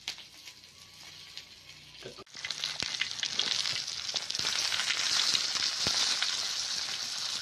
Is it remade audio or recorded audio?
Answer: recorded